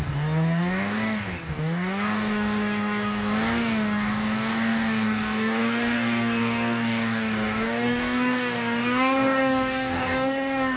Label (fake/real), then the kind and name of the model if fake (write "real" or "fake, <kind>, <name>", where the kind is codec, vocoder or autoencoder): fake, codec, DAC